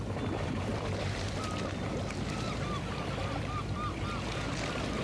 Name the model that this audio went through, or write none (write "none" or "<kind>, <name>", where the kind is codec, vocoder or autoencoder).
vocoder, BigVGAN v2